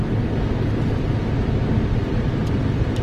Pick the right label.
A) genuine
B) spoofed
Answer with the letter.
A